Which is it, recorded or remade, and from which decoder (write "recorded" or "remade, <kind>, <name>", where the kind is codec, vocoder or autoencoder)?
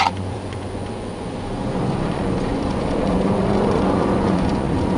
remade, vocoder, Vocos